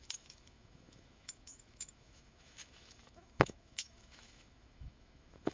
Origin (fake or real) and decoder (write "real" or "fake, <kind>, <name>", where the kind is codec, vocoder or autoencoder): fake, autoencoder, DAC-VAE